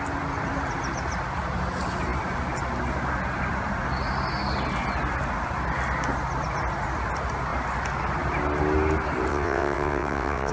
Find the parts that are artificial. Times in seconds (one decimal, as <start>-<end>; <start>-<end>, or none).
9.3-10.5

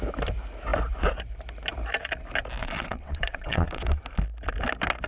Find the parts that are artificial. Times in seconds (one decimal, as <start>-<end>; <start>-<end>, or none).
2.6-4.0

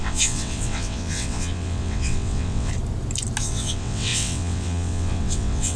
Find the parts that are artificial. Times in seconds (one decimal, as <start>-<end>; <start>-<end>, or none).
0.0-2.7; 3.4-5.8